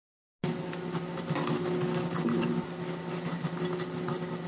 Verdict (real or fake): real